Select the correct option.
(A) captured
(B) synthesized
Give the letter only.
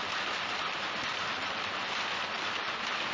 A